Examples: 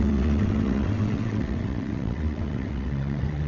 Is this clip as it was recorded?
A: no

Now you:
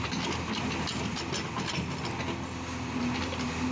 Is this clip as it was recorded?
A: yes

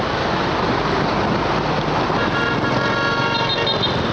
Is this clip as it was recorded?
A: yes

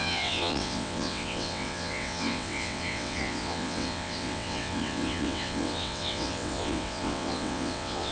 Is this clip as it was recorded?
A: no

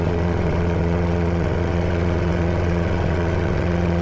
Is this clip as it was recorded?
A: no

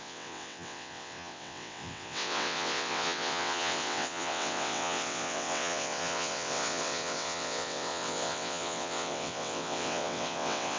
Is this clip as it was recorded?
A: no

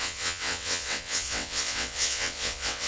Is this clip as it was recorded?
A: no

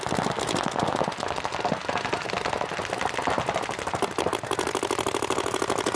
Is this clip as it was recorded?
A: yes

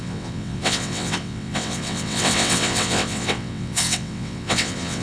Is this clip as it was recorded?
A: no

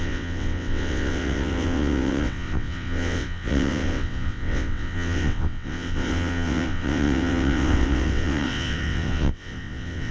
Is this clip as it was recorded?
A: no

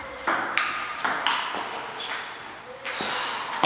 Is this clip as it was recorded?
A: yes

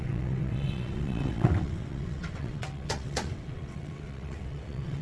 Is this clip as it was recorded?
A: no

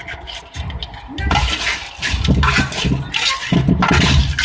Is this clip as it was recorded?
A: yes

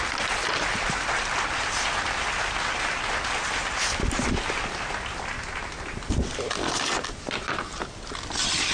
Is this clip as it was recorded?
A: yes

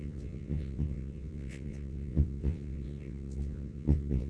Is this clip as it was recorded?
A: no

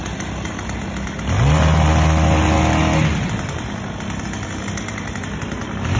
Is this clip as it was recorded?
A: yes